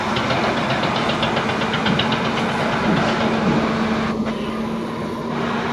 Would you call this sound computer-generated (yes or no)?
no